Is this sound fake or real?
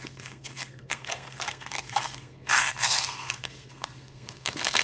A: fake